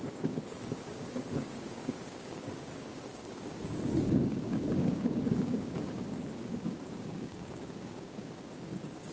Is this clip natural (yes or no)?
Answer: no